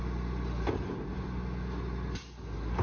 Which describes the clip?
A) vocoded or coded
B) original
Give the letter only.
B